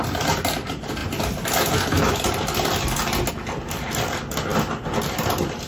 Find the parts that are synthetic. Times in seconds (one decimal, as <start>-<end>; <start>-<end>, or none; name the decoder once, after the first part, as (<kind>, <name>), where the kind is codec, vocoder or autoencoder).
none